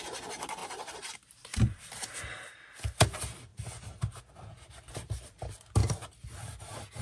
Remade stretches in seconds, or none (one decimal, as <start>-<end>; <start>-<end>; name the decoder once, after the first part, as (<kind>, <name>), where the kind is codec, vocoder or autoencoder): 0.6-2.6 (vocoder, BigVGAN v2); 3.5-4.2